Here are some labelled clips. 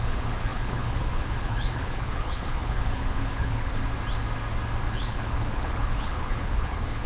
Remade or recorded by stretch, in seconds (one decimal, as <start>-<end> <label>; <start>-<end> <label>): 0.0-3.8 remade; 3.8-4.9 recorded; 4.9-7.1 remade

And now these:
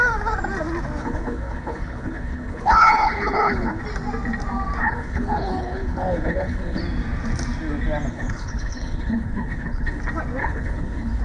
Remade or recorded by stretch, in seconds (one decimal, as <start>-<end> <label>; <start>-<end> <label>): 0.0-1.0 recorded; 1.0-3.8 remade; 3.8-4.8 recorded; 4.8-6.8 remade; 6.8-8.1 recorded; 8.1-10.0 remade; 10.0-10.4 recorded; 10.4-11.2 remade

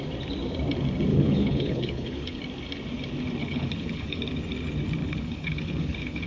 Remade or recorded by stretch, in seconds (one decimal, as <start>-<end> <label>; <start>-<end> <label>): 0.0-1.1 recorded; 1.1-2.4 remade; 2.4-3.4 recorded; 3.4-4.2 remade; 4.2-5.0 recorded; 5.0-6.3 remade

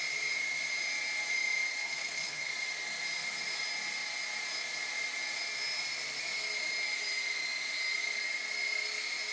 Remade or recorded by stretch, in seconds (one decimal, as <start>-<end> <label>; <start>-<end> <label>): 0.0-1.8 recorded; 1.8-2.5 remade; 2.5-9.3 recorded

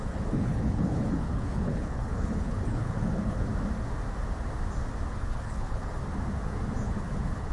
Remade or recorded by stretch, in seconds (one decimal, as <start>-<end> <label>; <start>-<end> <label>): 0.0-3.5 remade; 3.5-5.1 recorded; 5.1-6.0 remade; 6.0-6.8 recorded; 6.8-7.5 remade